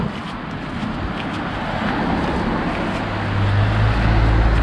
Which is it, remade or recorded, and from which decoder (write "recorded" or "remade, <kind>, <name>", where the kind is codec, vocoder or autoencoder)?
recorded